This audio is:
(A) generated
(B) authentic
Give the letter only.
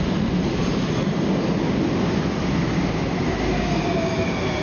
B